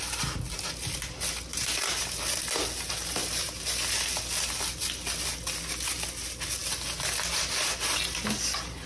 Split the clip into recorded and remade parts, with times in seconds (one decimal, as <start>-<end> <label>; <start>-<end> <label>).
0.0-8.9 recorded